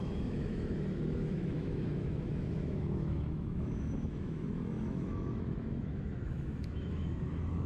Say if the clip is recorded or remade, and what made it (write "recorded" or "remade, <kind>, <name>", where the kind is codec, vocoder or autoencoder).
remade, autoencoder, DAC-VAE